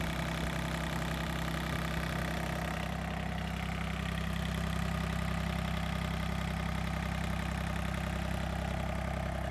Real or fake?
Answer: real